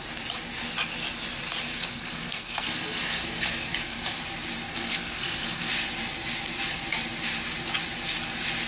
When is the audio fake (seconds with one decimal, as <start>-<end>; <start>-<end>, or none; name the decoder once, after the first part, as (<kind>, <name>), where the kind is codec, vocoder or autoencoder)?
1.7-4.2 (codec, SNAC); 4.7-5.7